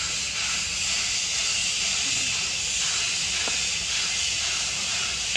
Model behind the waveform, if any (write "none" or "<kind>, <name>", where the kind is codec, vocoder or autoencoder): none